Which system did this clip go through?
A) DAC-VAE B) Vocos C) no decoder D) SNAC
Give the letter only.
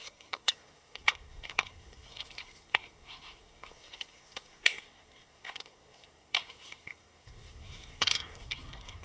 D